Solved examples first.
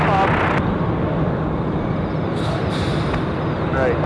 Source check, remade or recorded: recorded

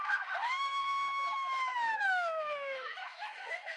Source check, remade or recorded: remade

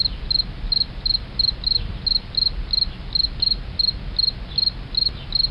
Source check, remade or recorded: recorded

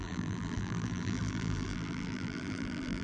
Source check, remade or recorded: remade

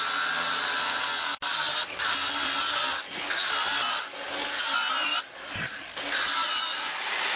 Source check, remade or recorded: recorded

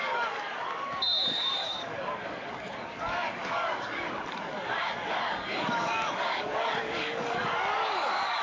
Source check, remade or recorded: remade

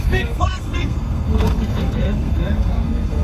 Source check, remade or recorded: remade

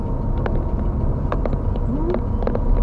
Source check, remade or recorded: recorded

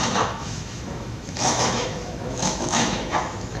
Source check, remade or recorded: remade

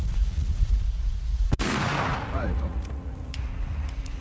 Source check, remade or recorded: remade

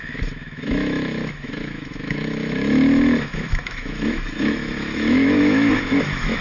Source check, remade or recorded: remade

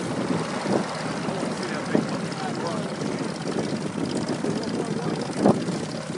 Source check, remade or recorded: recorded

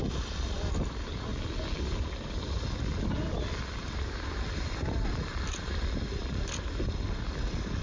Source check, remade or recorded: recorded